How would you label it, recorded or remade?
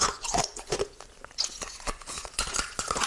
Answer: remade